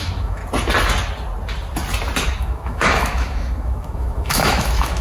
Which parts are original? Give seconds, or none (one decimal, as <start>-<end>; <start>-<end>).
0.4-2.4